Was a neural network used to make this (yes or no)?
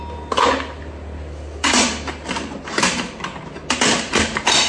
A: no